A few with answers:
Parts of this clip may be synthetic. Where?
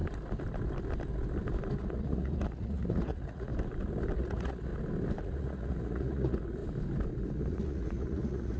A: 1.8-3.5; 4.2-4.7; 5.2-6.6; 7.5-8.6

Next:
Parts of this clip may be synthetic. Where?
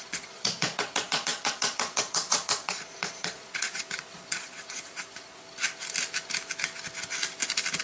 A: 0.0-5.4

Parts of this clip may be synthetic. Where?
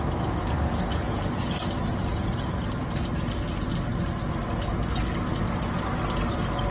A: 0.9-1.4; 2.1-2.7